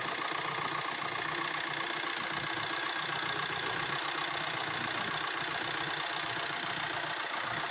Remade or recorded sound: recorded